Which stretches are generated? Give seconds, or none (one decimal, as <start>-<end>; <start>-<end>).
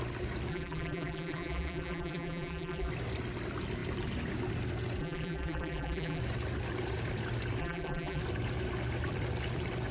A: 0.5-2.9; 5.0-6.2; 7.6-8.2